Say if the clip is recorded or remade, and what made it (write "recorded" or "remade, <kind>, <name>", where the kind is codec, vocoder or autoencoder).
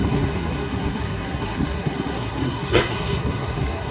remade, codec, SNAC